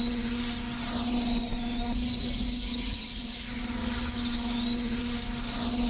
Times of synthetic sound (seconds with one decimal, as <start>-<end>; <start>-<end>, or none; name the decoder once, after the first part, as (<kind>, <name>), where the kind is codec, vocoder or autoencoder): none